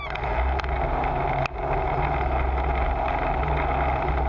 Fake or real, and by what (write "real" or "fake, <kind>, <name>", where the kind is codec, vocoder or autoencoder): real